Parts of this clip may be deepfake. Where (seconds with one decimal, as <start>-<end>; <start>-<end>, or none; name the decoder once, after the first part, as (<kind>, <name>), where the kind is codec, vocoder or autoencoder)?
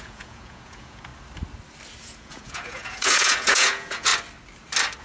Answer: 0.0-1.1 (vocoder, Vocos); 2.0-4.1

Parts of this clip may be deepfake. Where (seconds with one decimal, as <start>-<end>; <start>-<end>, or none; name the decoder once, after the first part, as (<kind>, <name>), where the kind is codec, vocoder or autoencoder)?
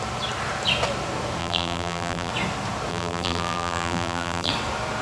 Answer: 1.4-2.3 (vocoder, BigVGAN v2); 2.9-4.5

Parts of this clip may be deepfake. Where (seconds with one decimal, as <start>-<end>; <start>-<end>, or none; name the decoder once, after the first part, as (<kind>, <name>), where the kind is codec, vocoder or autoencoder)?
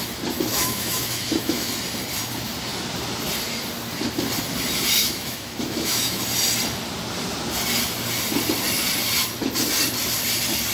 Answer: 0.5-1.7 (autoencoder, DAC-VAE); 5.0-6.2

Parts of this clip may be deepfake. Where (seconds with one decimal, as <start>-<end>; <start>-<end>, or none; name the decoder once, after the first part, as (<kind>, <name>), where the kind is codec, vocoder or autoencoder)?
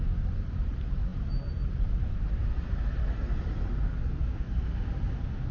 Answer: none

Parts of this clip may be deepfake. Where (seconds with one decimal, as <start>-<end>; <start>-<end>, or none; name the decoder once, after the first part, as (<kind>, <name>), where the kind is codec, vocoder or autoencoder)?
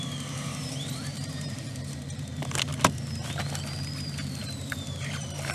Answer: 0.0-2.7 (vocoder, BigVGAN v2); 4.0-5.5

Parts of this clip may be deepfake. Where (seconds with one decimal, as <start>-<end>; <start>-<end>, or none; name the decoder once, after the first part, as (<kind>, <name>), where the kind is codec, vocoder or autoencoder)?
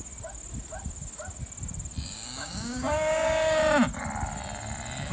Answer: 2.0-3.6 (codec, DAC)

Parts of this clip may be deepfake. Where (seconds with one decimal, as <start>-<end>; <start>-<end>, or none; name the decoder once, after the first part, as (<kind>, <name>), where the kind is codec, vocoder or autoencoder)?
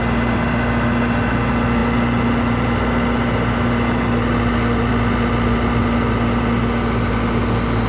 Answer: none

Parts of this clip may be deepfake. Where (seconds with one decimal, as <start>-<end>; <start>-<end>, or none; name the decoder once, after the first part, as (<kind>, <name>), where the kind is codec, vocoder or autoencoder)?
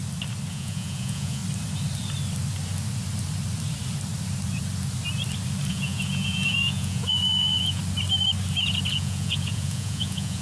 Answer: 0.5-1.4 (vocoder, Vocos); 5.7-7.8; 8.9-10.4